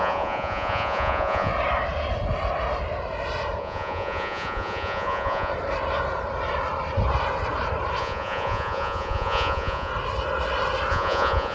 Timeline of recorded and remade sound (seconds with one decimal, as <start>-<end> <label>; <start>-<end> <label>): 0.0-1.5 remade; 1.5-3.6 recorded; 3.6-5.5 remade; 5.5-8.0 recorded; 8.0-9.9 remade; 9.9-10.9 recorded; 10.9-11.5 remade